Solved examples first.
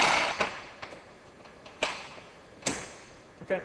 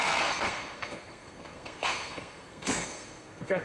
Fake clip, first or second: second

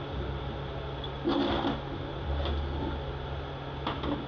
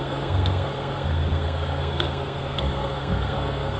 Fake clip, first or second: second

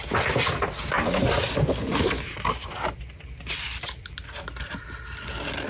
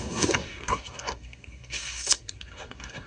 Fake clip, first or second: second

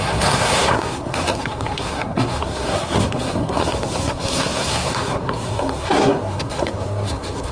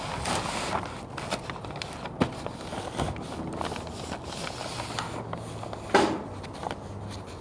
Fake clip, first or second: first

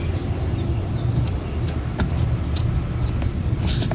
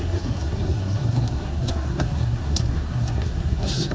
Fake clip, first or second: second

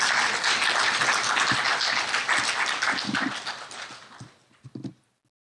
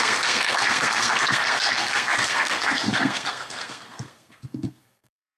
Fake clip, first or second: second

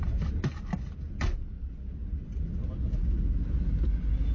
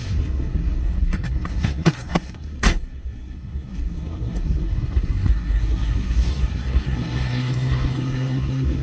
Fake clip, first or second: second